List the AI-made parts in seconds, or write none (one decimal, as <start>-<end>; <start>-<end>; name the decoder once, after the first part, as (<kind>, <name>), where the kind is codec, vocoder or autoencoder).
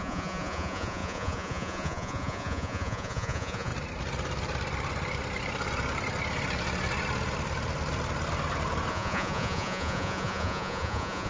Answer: 0.0-3.7 (vocoder, Vocos); 8.9-11.3